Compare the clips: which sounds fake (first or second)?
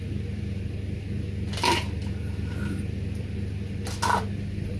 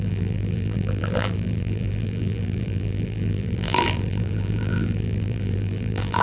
second